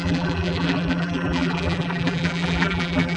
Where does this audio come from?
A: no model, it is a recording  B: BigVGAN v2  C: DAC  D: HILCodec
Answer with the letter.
B